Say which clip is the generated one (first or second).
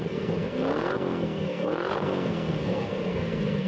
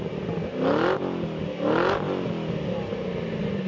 first